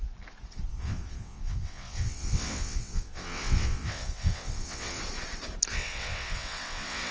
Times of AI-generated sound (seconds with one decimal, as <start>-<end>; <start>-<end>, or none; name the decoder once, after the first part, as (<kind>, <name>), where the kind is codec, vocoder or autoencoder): 0.7-5.0 (vocoder, WaveNeXt); 5.7-7.1